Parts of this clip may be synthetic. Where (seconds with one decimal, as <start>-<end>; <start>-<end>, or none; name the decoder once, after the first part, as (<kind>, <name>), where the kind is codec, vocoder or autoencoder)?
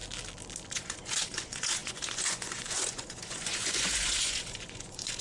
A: 0.7-5.2 (vocoder, Vocos)